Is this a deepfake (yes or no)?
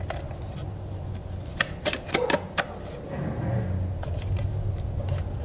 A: no